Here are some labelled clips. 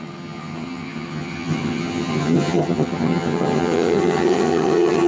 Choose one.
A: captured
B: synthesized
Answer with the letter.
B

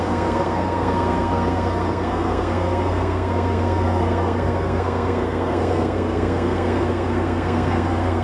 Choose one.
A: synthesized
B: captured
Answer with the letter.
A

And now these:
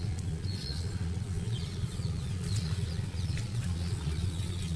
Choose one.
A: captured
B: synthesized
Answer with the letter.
B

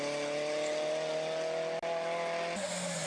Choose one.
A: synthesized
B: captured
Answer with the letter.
B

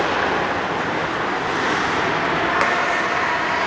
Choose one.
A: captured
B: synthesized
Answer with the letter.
A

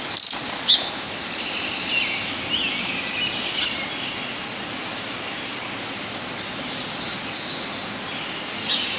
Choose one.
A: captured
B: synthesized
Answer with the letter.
A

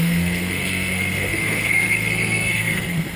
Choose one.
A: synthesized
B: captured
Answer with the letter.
A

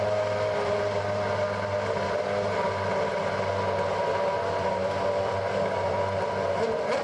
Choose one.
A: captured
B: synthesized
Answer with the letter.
A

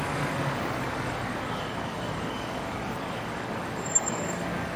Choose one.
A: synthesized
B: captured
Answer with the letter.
A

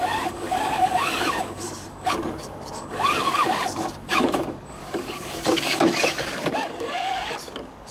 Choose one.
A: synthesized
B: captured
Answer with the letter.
A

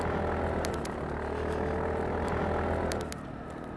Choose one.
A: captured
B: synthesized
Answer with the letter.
A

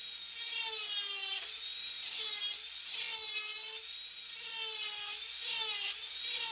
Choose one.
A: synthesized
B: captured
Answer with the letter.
B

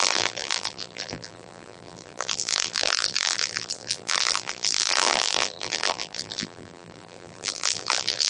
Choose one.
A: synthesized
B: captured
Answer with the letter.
A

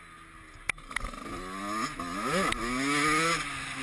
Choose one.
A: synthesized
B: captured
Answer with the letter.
B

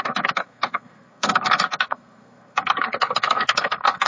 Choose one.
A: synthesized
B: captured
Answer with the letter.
A